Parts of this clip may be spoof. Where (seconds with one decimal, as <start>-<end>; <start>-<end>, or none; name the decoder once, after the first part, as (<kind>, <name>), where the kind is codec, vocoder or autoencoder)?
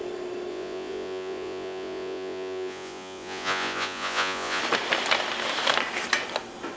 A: 0.5-4.6 (vocoder, Vocos)